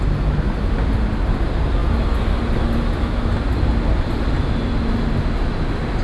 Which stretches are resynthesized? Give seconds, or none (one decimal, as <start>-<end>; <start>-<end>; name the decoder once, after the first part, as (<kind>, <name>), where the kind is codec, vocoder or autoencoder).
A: none